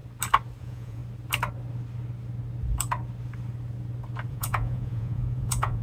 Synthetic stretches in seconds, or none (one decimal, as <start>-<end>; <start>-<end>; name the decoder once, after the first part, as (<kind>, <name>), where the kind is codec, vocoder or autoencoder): 0.6-1.0 (vocoder, Vocos); 4.3-5.8